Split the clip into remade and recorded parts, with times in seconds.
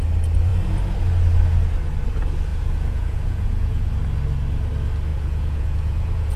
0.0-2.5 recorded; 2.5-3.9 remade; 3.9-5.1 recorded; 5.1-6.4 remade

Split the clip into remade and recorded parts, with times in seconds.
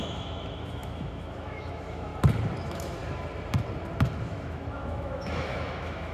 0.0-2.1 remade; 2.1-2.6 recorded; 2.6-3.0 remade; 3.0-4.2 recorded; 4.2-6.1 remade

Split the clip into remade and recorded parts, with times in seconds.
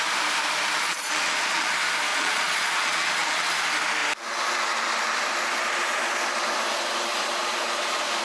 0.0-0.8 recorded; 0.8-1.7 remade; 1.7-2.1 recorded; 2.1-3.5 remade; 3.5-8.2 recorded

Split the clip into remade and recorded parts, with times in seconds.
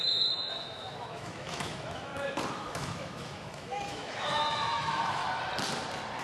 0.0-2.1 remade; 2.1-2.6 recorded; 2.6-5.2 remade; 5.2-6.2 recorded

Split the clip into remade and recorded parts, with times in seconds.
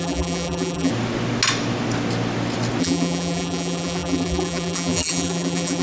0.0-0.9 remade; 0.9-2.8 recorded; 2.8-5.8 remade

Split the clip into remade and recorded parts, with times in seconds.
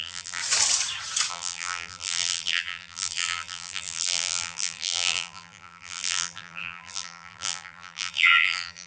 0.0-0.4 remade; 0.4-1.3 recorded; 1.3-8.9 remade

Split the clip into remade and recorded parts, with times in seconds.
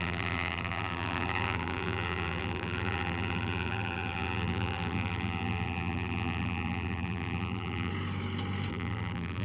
0.0-7.9 remade; 7.9-8.7 recorded; 8.7-9.4 remade